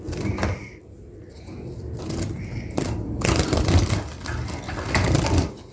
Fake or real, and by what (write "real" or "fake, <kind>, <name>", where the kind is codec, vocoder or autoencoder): real